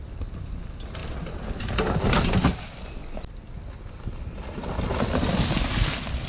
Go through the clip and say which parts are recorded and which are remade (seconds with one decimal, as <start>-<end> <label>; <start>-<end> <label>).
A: 0.0-6.3 recorded